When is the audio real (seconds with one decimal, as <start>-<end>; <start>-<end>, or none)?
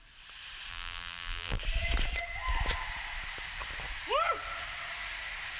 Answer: 0.0-0.7; 1.6-5.6